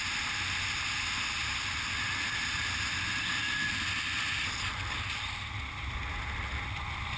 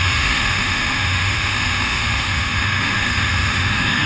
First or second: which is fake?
second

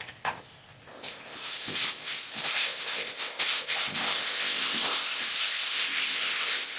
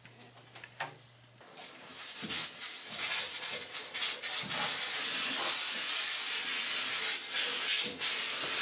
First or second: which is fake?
first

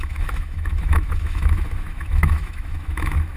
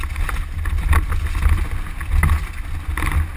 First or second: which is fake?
first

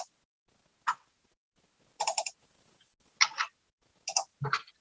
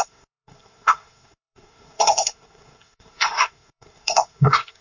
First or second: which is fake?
second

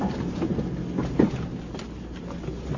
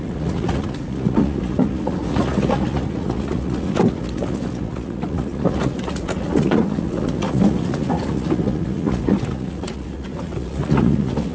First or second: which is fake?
second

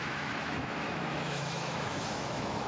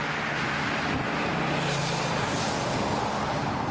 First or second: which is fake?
first